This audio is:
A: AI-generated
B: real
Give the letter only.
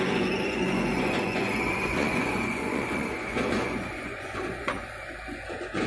A